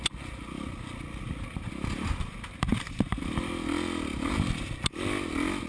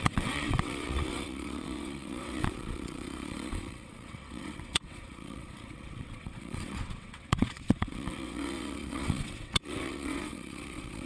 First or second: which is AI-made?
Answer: second